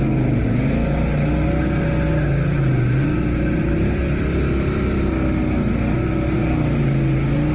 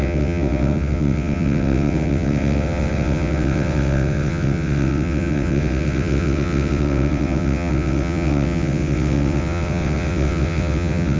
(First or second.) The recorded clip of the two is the first